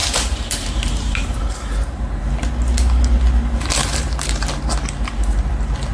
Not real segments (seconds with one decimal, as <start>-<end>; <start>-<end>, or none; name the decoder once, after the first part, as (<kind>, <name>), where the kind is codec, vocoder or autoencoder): 0.0-1.4 (vocoder, BigVGAN v2); 3.8-4.5